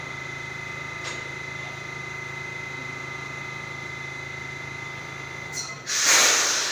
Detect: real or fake real